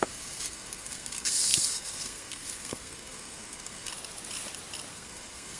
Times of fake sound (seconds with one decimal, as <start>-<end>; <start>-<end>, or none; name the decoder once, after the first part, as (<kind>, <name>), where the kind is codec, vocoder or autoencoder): 0.0-3.9 (codec, SNAC); 4.9-5.6